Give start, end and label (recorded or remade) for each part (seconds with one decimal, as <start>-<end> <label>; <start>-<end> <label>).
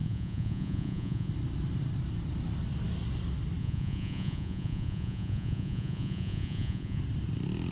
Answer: 0.0-1.3 remade; 1.3-3.6 recorded; 3.6-7.0 remade; 7.0-7.7 recorded